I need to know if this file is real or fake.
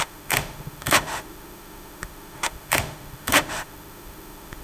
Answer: fake